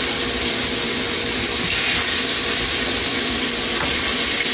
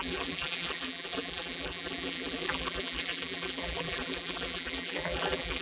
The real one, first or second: first